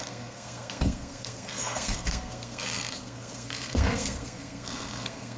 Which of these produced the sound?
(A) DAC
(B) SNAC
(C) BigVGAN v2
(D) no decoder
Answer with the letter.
B